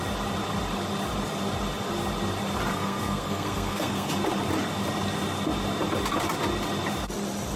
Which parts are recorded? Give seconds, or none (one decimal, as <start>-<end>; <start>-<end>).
0.0-2.7; 4.1-7.6

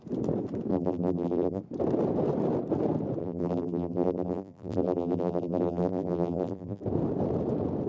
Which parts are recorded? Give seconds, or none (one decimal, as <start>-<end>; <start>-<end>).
0.0-0.7; 1.6-3.2; 6.8-7.9

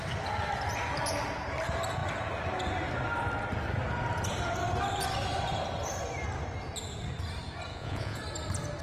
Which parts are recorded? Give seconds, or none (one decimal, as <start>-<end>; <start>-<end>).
0.0-7.7; 8.2-8.8

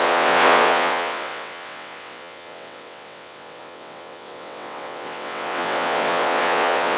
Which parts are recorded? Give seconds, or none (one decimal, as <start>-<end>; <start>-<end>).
none

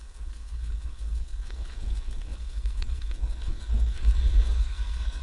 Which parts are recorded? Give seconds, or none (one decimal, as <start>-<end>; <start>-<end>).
none

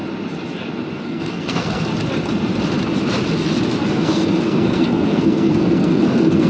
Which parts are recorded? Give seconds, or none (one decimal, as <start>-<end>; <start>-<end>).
0.0-1.0; 1.9-3.9

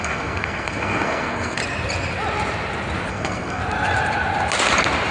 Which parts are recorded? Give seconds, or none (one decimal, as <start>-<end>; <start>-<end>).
1.6-3.1; 3.6-5.1